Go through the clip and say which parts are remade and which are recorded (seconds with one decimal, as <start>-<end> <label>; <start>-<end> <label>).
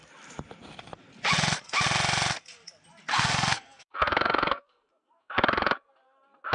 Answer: 0.0-3.1 recorded; 3.1-5.9 remade; 5.9-6.5 recorded